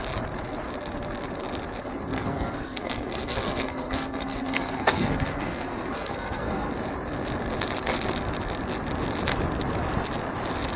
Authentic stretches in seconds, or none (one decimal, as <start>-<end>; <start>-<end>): 0.0-2.1; 6.7-10.8